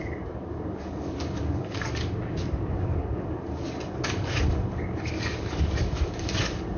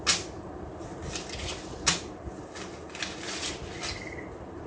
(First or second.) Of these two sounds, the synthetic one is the first